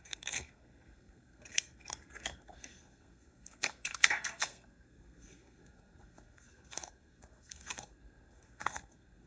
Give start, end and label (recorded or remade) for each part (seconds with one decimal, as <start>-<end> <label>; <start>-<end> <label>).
0.0-9.3 remade